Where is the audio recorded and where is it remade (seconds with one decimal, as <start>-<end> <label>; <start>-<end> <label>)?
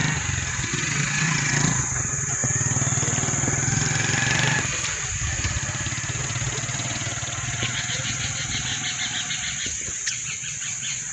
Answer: 0.0-0.5 recorded; 0.5-2.4 remade; 2.4-6.2 recorded; 6.2-8.7 remade; 8.7-9.3 recorded; 9.3-11.1 remade